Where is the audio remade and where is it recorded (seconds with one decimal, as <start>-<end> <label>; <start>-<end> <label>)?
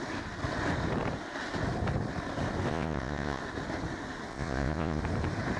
0.0-2.7 recorded; 2.7-3.4 remade; 3.4-4.3 recorded; 4.3-5.0 remade; 5.0-5.6 recorded